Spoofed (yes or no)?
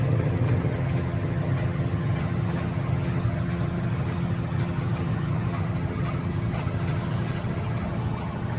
yes